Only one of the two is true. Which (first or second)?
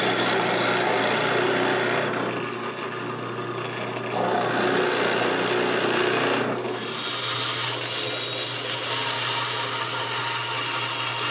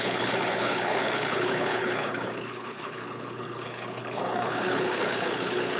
first